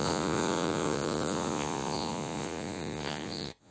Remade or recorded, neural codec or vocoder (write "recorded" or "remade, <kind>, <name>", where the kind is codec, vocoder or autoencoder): remade, vocoder, Vocos